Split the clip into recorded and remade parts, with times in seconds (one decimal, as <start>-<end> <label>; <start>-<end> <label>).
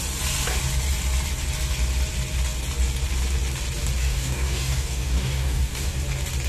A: 0.0-4.0 recorded; 4.0-6.0 remade; 6.0-6.5 recorded